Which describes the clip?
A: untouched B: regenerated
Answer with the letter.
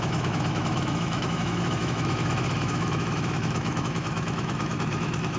B